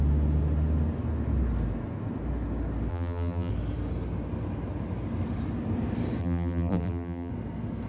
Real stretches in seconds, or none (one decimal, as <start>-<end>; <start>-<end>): 0.0-2.9; 3.5-6.2; 7.3-7.9